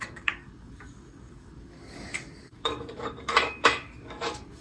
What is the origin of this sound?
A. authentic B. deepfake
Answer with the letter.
B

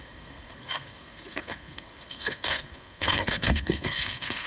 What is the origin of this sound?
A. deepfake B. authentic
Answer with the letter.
A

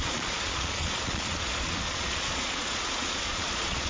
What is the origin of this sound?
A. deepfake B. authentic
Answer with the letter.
A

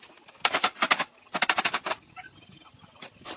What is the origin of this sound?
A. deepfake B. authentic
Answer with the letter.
A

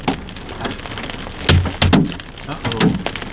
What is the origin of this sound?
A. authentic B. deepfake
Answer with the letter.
A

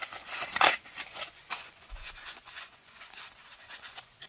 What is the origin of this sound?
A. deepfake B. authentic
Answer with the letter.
A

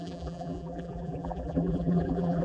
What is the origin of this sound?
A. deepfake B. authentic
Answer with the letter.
A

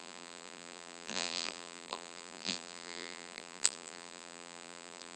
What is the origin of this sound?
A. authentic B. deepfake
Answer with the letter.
B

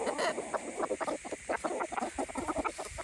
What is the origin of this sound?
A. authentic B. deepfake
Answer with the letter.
A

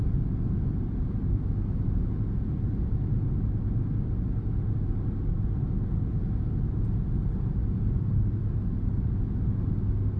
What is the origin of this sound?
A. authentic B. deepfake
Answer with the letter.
A